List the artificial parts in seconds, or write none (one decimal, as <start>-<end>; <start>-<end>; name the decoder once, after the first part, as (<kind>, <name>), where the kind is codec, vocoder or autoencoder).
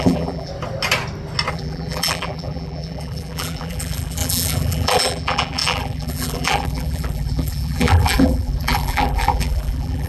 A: 0.0-0.5 (vocoder, BigVGAN v2); 1.5-10.1